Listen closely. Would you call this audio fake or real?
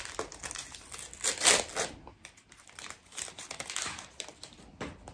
real